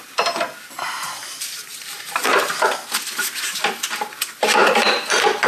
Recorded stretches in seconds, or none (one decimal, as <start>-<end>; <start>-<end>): 0.0-1.7; 2.5-4.6